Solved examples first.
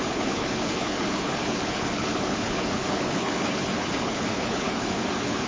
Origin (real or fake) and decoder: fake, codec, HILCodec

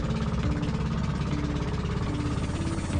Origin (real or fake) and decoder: real